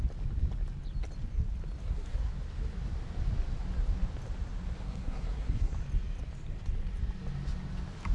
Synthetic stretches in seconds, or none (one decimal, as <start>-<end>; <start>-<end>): 1.8-2.3; 4.8-5.7